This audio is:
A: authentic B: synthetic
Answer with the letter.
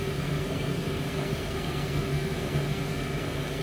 B